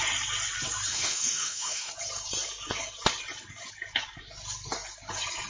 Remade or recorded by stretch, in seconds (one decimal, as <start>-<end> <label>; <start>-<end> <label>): 0.0-0.9 recorded; 0.9-1.9 remade; 1.9-5.5 recorded

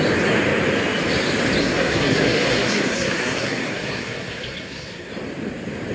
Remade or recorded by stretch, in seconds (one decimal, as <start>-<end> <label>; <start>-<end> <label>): 0.0-1.6 recorded; 1.6-5.1 remade; 5.1-5.9 recorded

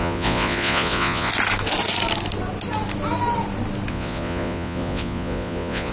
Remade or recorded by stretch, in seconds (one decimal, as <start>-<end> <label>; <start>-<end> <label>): 0.0-1.3 remade; 1.3-3.9 recorded; 3.9-5.9 remade

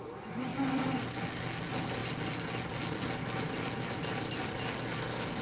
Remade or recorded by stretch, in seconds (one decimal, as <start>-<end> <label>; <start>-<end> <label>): 0.0-5.4 recorded

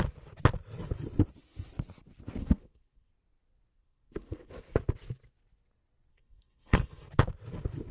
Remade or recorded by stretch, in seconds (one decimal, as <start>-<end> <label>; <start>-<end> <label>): 0.0-2.4 recorded; 2.4-3.1 remade; 3.1-3.7 recorded; 3.7-4.5 remade; 4.5-6.1 recorded; 6.1-7.1 remade; 7.1-7.9 recorded

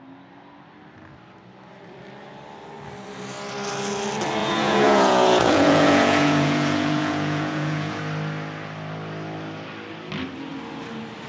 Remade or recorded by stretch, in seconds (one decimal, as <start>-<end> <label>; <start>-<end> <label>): 0.0-4.4 recorded; 4.4-8.0 remade; 8.0-11.3 recorded

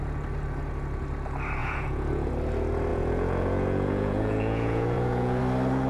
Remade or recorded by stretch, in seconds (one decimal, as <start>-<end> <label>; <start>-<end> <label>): 0.0-1.6 recorded; 1.6-2.3 remade; 2.3-2.9 recorded; 2.9-5.4 remade; 5.4-5.9 recorded